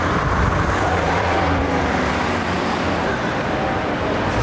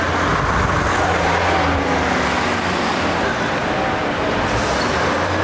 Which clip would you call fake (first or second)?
first